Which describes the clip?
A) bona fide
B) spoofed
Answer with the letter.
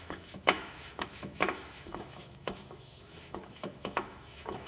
B